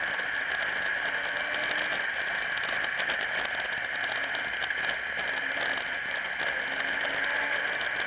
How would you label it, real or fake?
real